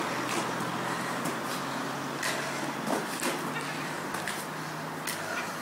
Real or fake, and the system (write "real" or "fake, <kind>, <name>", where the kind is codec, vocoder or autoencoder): real